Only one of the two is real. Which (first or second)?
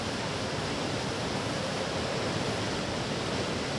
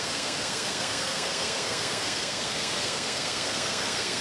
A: first